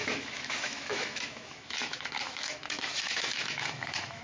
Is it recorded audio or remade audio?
remade